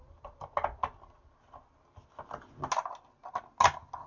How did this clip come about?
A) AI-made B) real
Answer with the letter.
B